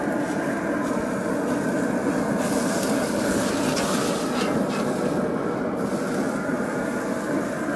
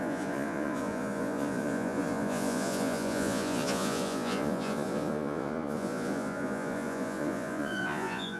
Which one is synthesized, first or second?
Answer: second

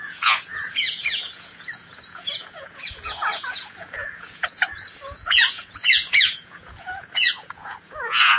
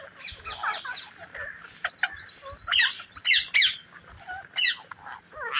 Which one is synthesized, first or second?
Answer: first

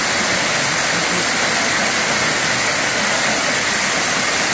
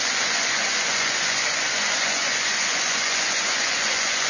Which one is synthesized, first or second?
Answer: second